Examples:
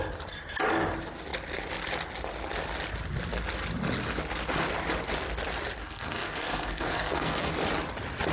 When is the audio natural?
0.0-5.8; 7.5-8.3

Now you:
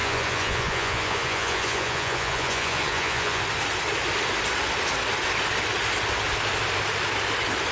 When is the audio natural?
3.4-7.7

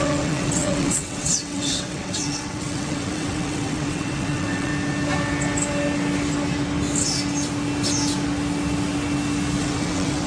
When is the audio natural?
4.7-9.6

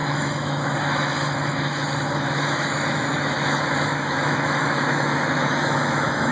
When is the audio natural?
none

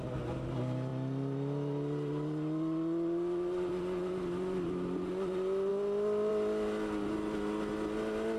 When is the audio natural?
0.0-8.4

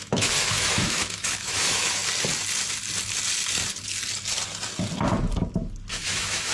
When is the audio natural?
2.0-5.9

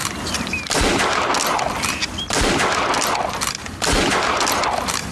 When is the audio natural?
0.0-5.1